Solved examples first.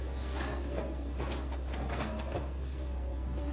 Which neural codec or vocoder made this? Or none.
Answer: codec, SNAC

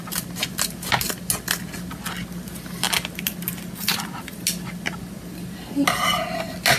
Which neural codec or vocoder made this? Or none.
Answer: none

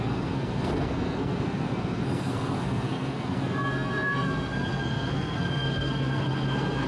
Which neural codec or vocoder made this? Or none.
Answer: codec, SNAC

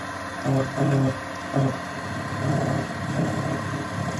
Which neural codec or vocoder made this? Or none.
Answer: none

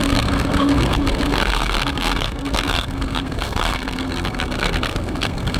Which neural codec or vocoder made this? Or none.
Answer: codec, SNAC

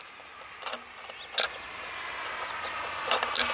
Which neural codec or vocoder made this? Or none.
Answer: none